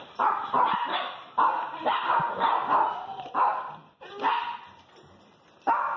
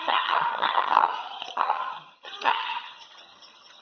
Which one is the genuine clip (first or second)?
first